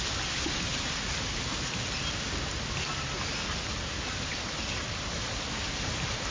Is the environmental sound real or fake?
real